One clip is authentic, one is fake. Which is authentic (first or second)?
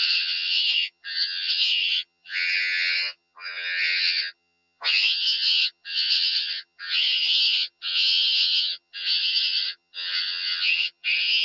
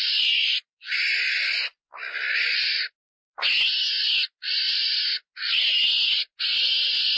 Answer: second